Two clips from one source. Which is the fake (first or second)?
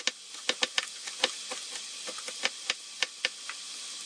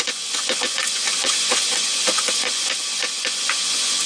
second